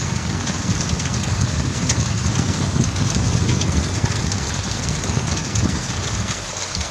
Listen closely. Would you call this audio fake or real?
fake